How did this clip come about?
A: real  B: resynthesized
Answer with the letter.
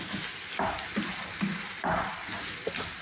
A